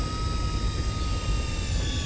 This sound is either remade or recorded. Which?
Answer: recorded